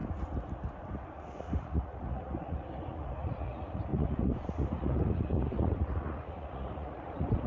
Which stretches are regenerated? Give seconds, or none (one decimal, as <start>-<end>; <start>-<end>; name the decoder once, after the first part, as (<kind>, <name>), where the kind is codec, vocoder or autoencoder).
1.0-7.5 (vocoder, Vocos)